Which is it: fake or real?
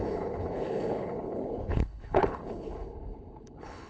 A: fake